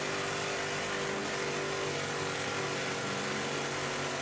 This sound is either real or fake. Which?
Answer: real